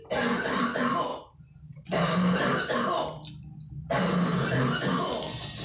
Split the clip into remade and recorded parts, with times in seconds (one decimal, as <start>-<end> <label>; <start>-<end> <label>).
0.0-1.1 recorded; 1.1-2.4 remade; 2.4-5.6 recorded